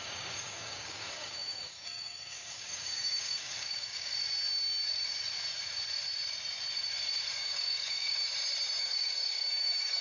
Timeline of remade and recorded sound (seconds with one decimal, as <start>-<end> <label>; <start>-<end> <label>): 0.0-4.1 remade; 4.1-7.4 recorded; 7.4-8.2 remade; 8.2-8.8 recorded; 8.8-10.0 remade